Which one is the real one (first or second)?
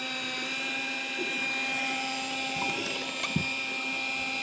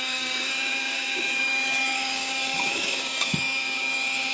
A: first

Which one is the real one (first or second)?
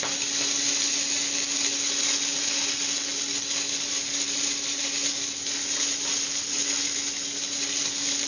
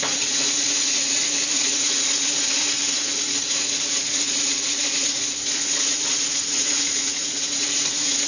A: first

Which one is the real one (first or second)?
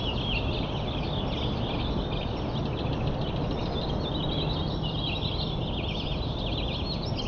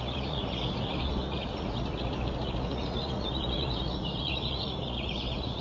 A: first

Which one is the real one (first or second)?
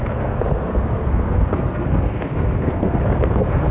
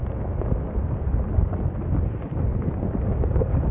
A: second